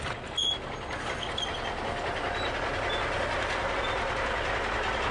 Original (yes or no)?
yes